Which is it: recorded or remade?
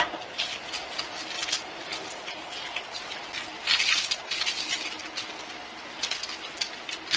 recorded